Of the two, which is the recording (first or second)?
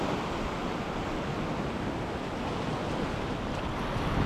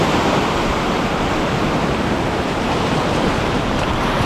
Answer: first